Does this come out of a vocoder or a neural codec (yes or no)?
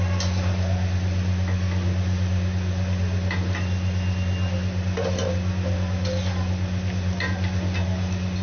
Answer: no